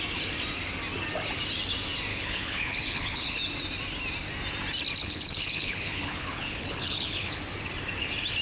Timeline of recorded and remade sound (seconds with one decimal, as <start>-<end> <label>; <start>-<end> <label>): 0.0-2.1 recorded; 2.1-3.4 remade; 3.4-5.0 recorded; 5.0-7.4 remade; 7.4-8.4 recorded